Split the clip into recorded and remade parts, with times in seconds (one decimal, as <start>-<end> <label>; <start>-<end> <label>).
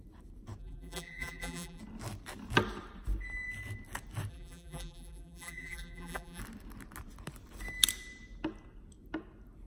0.0-0.6 recorded; 0.6-1.8 remade; 1.8-4.3 recorded; 4.3-6.4 remade; 6.4-9.7 recorded